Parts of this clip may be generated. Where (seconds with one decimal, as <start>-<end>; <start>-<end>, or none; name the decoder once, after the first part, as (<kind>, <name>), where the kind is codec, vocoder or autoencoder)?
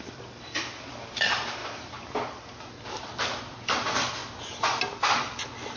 0.0-4.2 (vocoder, BigVGAN v2)